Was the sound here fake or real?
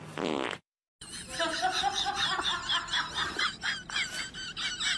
real